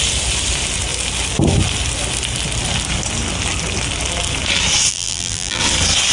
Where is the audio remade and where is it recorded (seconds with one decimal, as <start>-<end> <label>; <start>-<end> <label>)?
0.0-4.9 recorded; 4.9-5.6 remade; 5.6-6.1 recorded